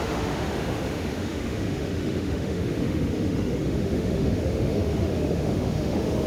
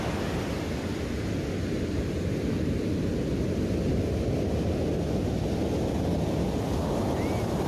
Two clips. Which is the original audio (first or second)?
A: second